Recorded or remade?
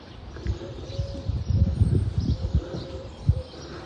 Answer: remade